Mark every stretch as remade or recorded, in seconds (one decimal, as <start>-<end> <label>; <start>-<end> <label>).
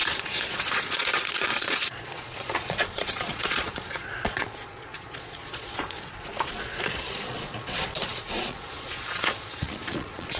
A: 0.0-10.4 remade